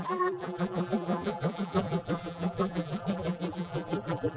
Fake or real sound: fake